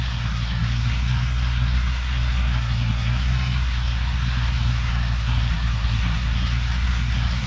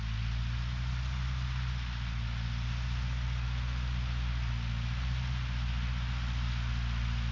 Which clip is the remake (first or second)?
first